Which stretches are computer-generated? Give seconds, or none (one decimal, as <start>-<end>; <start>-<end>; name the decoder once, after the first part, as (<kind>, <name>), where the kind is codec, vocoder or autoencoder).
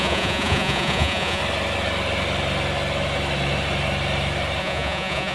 0.0-1.4 (vocoder, Vocos); 4.6-5.3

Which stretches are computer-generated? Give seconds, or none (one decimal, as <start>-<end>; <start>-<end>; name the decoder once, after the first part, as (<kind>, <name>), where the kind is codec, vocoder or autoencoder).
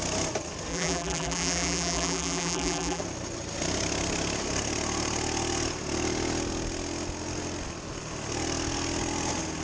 0.7-3.0 (vocoder, BigVGAN v2)